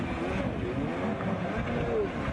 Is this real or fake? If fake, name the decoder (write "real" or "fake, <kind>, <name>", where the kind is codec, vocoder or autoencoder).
real